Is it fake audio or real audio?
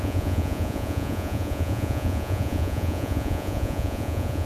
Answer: fake